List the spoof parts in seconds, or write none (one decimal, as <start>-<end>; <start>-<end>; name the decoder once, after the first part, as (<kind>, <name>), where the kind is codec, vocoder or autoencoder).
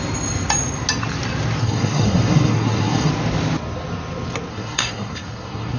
1.6-3.1 (codec, SNAC); 4.5-5.8